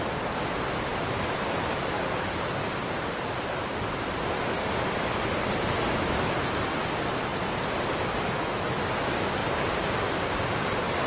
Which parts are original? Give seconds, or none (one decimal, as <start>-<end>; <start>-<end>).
0.0-11.1